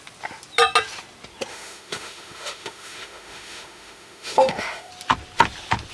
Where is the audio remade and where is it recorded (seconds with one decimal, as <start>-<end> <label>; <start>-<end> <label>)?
0.0-1.5 recorded; 1.5-4.9 remade; 4.9-5.9 recorded